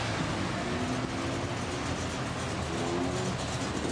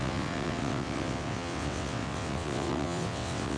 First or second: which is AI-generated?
second